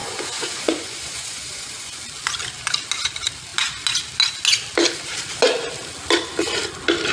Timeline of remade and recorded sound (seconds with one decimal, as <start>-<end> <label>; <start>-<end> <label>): 0.0-2.0 remade; 2.0-7.1 recorded